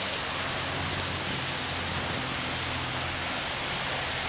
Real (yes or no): yes